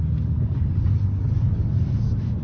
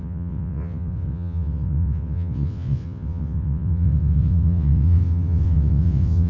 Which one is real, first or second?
first